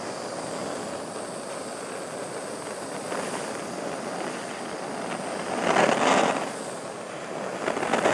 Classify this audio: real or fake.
real